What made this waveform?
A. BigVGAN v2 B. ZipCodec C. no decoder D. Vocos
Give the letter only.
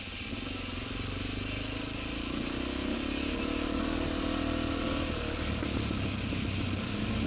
C